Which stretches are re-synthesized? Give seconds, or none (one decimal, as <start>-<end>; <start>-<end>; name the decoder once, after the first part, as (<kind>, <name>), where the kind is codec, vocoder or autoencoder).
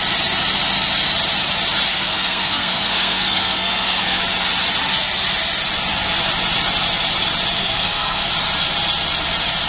1.9-4.2 (codec, SNAC); 7.6-8.3